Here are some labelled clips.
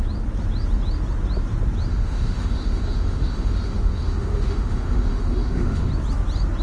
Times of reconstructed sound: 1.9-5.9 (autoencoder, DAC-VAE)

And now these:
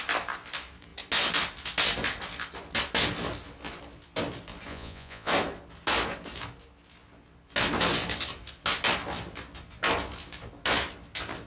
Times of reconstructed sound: 4.7-5.3 (vocoder, Vocos)

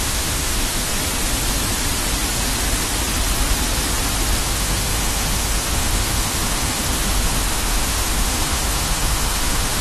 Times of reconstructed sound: 0.0-0.9 (autoencoder, DAC-VAE); 4.4-9.8

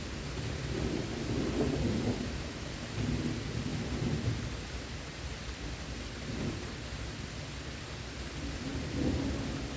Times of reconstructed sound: none

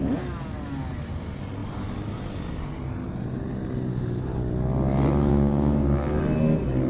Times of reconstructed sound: 5.3-6.2 (codec, DAC)